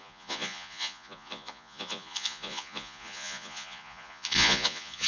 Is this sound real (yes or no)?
no